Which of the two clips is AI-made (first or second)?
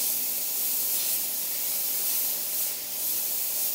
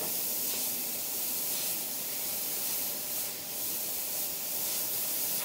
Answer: second